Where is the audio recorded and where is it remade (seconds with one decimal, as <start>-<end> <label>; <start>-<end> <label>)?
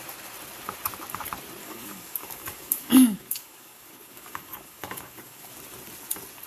0.0-1.6 recorded; 1.6-5.5 remade; 5.5-6.5 recorded